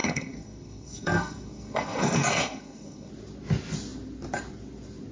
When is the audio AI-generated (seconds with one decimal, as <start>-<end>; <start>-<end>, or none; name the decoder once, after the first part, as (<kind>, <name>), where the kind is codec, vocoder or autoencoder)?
0.0-3.1 (codec, SNAC)